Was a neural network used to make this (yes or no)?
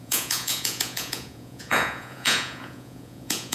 yes